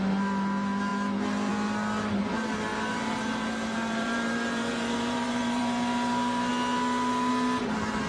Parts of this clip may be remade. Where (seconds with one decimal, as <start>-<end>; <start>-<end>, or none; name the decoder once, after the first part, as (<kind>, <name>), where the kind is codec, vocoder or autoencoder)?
2.7-5.6 (vocoder, BigVGAN v2)